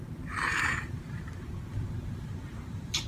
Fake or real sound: fake